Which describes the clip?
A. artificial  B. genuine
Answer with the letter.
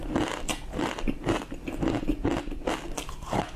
B